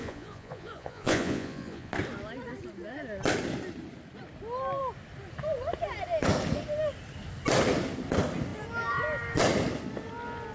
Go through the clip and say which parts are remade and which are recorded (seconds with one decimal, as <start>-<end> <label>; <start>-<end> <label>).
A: 0.0-1.9 remade; 1.9-10.5 recorded